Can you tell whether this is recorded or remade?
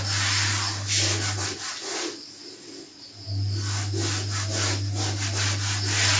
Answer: recorded